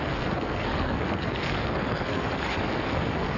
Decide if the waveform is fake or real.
fake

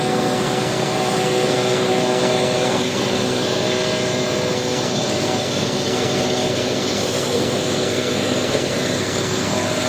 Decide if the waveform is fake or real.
fake